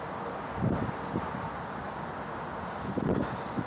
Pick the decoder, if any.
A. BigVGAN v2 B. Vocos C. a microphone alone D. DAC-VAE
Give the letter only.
A